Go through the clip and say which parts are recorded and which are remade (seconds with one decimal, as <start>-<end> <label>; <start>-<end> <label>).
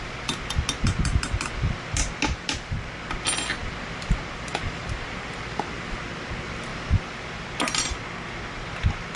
0.0-3.6 recorded; 3.6-6.0 remade; 6.0-9.2 recorded